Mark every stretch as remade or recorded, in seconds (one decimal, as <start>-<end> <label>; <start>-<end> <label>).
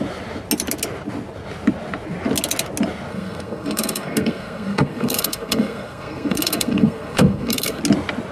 0.0-3.1 recorded; 3.1-7.8 remade; 7.8-8.3 recorded